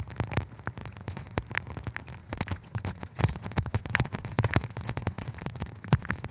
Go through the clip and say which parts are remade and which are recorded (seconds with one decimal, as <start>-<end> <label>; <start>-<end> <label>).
0.0-0.8 recorded; 0.8-1.4 remade; 1.4-2.2 recorded; 2.2-6.3 remade